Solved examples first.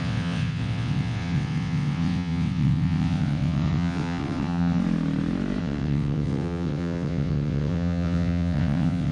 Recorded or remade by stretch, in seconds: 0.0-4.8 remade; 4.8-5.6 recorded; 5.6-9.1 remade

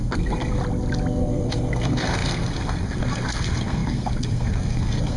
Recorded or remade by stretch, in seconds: 0.0-0.6 remade; 0.6-1.2 recorded; 1.2-5.2 remade

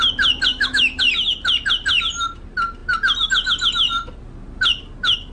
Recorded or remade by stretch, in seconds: 0.0-0.5 recorded; 0.5-1.0 remade; 1.0-5.3 recorded

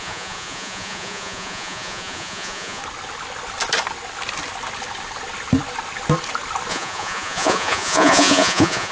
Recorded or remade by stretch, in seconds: 0.0-2.8 remade; 2.8-6.7 recorded; 6.7-8.9 remade

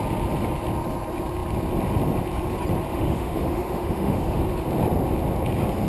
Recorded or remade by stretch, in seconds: 0.0-2.9 recorded; 2.9-4.4 remade; 4.4-5.9 recorded